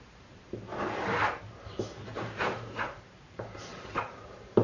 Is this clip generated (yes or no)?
yes